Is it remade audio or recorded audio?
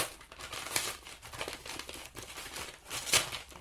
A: recorded